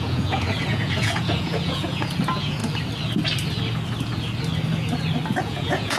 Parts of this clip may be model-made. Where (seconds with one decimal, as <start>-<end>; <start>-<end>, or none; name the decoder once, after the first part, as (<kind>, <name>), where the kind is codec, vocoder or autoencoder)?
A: 0.0-2.6 (vocoder, Vocos); 5.4-6.0